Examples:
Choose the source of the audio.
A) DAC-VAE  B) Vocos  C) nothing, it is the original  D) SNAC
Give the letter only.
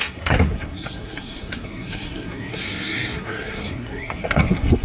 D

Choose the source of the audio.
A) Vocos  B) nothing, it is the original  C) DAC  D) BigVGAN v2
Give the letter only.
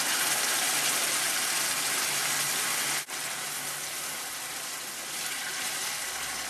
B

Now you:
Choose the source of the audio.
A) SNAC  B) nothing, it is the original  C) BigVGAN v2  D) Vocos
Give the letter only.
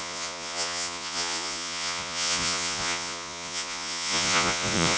D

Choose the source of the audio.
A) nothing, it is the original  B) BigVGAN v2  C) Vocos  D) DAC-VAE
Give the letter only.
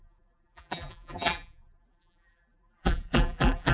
B